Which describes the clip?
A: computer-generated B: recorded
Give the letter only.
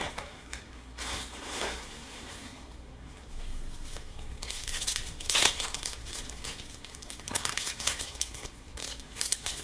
A